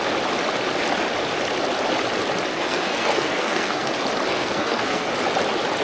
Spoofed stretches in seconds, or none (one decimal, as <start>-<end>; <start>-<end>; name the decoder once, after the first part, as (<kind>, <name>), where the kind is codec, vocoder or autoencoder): 2.5-3.9 (codec, SNAC); 4.3-5.1